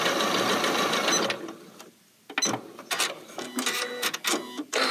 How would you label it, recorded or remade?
recorded